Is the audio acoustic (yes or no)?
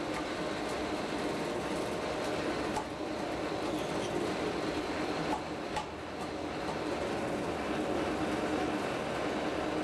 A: yes